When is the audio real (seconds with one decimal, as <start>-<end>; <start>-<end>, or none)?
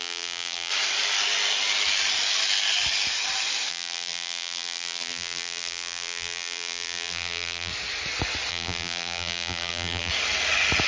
0.7-3.7; 7.7-8.5; 10.1-10.9